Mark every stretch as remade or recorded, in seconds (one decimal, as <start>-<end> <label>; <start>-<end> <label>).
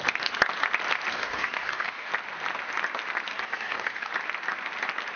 0.0-1.1 recorded; 1.1-2.1 remade; 2.1-3.3 recorded; 3.3-4.1 remade; 4.1-5.2 recorded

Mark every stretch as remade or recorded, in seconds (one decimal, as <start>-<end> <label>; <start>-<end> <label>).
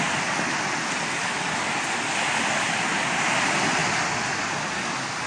0.0-5.3 recorded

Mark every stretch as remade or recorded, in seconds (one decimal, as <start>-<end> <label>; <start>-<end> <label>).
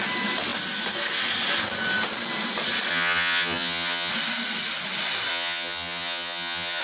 0.0-2.9 recorded; 2.9-4.1 remade; 4.1-5.3 recorded; 5.3-6.8 remade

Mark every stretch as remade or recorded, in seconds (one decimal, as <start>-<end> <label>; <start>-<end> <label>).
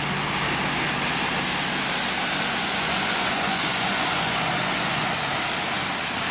0.0-2.6 recorded; 2.6-5.3 remade; 5.3-6.3 recorded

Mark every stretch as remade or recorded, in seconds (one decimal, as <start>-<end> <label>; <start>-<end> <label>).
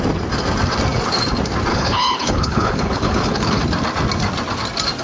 0.0-1.7 recorded; 1.7-3.6 remade; 3.6-5.0 recorded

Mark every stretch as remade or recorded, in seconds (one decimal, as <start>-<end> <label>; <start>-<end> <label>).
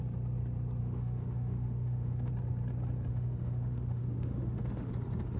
0.0-0.8 recorded; 0.8-2.3 remade; 2.3-3.1 recorded; 3.1-4.9 remade; 4.9-5.4 recorded